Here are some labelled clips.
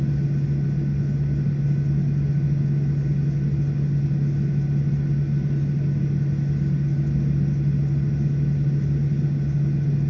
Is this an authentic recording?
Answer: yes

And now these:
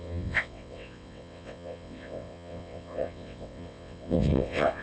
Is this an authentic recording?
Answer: no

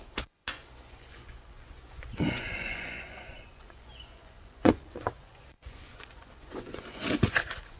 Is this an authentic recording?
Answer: no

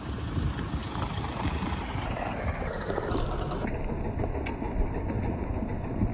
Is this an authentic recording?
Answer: yes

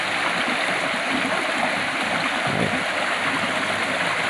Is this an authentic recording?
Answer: yes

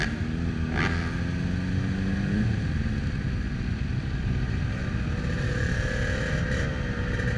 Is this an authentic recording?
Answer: yes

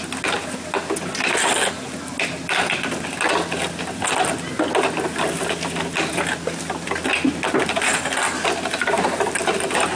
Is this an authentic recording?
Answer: yes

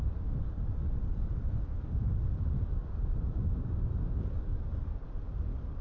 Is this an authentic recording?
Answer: yes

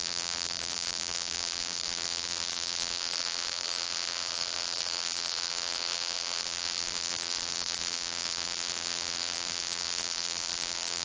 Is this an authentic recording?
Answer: no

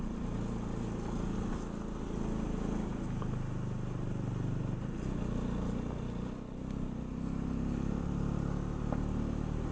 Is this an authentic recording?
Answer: yes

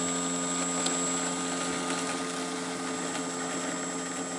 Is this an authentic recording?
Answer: yes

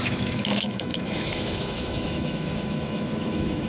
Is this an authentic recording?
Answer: no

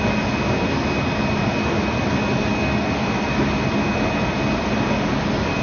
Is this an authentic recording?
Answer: yes